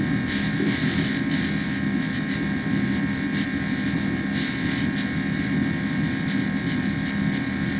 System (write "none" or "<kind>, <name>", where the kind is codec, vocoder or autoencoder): none